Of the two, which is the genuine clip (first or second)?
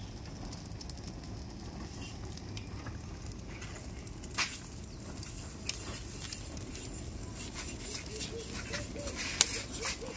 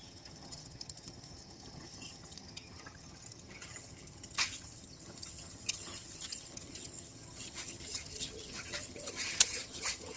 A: first